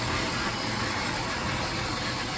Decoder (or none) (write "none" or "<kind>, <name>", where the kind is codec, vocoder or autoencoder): none